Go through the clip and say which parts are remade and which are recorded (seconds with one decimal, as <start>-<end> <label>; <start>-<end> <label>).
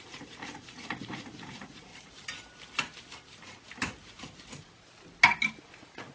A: 0.0-1.9 remade; 1.9-5.6 recorded; 5.6-6.1 remade